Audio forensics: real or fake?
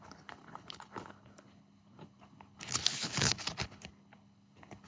fake